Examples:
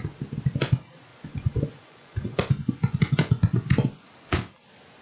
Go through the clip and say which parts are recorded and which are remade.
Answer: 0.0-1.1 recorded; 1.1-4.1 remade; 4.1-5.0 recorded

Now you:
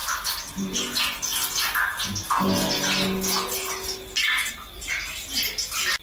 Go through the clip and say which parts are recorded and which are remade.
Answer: 0.0-6.0 recorded

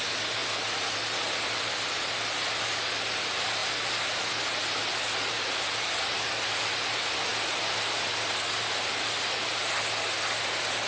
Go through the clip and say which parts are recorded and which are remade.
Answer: 0.0-3.6 recorded; 3.6-4.2 remade; 4.2-7.3 recorded; 7.3-9.5 remade; 9.5-10.9 recorded

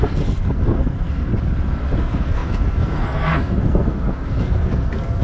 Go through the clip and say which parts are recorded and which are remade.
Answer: 0.0-1.3 remade; 1.3-2.0 recorded; 2.0-5.2 remade

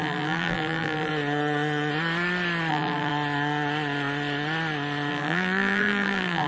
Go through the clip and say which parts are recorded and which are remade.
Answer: 0.0-1.1 remade; 1.1-2.7 recorded; 2.7-3.1 remade; 3.1-5.1 recorded; 5.1-6.5 remade

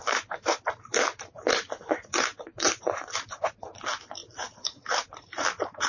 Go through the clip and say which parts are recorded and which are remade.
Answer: 0.0-1.3 remade; 1.3-2.1 recorded; 2.1-3.5 remade; 3.5-4.2 recorded; 4.2-5.9 remade